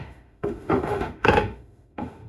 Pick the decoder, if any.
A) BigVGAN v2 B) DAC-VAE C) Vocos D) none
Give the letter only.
B